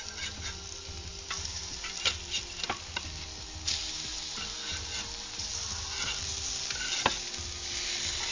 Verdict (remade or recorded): recorded